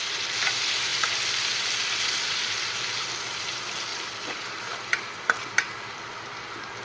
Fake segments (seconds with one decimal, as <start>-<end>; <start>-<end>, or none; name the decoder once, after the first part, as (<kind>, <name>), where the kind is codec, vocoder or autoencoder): none